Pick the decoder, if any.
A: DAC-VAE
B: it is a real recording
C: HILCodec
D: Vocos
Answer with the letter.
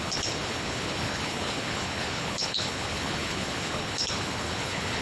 C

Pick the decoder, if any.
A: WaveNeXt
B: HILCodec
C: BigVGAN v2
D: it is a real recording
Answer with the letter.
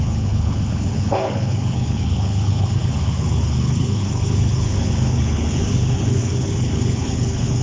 B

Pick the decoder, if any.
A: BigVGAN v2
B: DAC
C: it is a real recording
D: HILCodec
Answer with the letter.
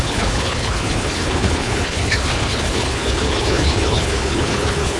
D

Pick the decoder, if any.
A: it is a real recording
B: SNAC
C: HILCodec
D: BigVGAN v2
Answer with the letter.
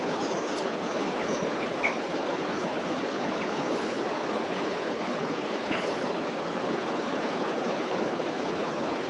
C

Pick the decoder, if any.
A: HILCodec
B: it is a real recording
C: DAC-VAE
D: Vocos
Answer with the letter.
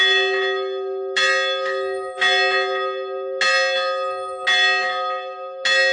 B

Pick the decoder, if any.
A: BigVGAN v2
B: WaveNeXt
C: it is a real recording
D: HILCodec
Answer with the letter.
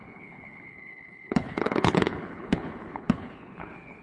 D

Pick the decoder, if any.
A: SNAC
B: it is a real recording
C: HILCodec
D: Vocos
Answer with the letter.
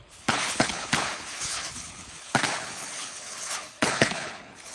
C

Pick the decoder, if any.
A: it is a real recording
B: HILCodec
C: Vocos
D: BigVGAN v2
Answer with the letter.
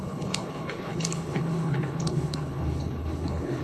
B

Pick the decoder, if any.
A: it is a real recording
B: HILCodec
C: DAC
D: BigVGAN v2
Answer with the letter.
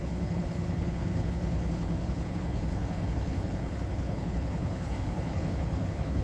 B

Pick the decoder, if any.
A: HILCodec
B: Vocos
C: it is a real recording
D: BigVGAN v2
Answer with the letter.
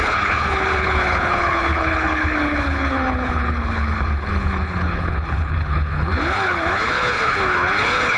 A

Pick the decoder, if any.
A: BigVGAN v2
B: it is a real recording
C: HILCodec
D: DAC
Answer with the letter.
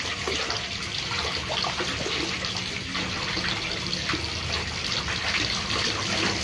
B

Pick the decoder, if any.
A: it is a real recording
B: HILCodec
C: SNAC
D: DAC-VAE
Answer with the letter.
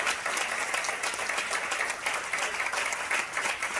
A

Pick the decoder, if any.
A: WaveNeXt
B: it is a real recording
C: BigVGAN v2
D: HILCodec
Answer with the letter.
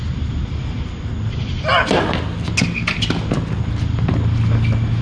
B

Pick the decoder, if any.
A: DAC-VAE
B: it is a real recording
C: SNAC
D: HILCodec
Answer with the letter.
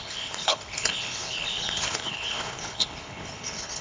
D